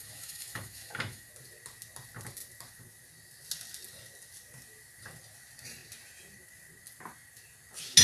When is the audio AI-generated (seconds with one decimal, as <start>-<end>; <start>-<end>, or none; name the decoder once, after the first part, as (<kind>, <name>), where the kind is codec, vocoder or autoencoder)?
0.0-1.3 (autoencoder, DAC-VAE)